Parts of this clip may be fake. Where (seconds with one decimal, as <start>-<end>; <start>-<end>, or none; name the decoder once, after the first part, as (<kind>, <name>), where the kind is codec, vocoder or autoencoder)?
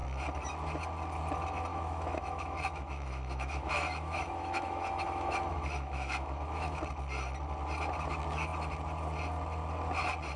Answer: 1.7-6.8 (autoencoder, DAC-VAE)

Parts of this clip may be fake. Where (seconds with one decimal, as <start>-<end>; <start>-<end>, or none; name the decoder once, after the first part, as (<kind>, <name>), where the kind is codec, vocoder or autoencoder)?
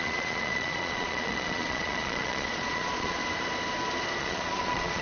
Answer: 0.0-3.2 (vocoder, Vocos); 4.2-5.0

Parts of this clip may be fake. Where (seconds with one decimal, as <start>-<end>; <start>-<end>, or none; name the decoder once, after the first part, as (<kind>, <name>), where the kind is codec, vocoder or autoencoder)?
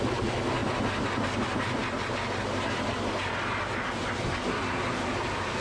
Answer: none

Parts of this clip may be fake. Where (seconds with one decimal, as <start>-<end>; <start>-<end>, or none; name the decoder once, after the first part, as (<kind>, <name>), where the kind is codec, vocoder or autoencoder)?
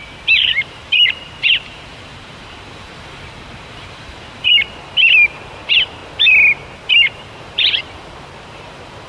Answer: 0.0-6.0 (vocoder, BigVGAN v2); 7.1-9.1